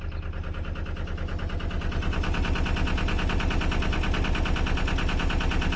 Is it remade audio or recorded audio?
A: recorded